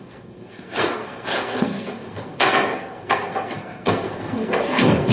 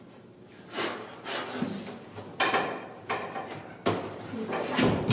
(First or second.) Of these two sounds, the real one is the second